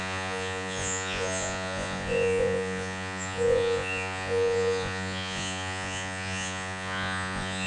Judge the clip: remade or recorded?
remade